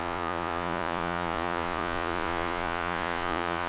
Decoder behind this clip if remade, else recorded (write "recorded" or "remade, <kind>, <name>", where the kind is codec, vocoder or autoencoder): remade, vocoder, Vocos